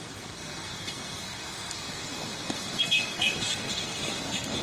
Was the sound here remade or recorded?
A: remade